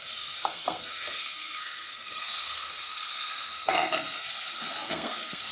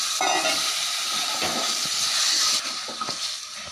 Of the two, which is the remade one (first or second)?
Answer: first